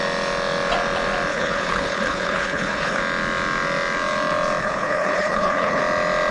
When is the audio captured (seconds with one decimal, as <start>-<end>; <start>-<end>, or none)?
0.0-1.3; 3.0-4.6; 5.8-6.3